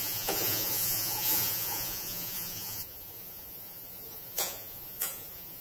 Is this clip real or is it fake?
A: fake